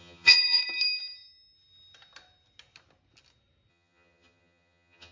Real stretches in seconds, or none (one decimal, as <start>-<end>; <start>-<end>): 0.6-3.7